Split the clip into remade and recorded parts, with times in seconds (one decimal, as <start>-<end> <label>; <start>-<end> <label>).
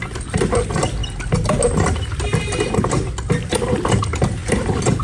0.0-5.0 recorded